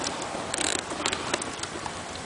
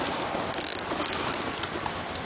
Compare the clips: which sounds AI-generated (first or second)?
first